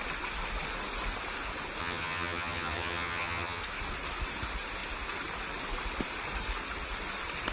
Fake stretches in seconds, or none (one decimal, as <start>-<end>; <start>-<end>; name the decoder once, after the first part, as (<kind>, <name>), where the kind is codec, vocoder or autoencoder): 1.8-3.6 (vocoder, HiFi-GAN)